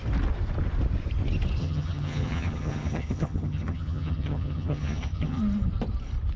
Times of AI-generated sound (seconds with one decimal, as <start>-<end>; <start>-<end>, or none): 1.6-5.4